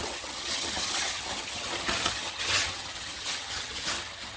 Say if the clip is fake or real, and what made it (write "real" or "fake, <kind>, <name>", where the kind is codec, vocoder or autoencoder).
fake, vocoder, HiFi-GAN